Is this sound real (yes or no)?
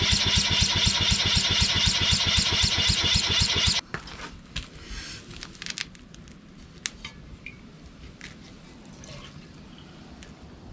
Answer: yes